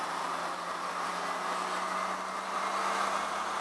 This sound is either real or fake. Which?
real